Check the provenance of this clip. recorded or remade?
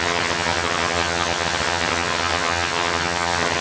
remade